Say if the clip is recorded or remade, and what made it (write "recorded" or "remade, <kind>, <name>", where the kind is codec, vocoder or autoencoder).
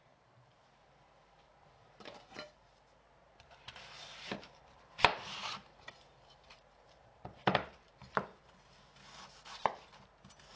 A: remade, vocoder, BigVGAN v2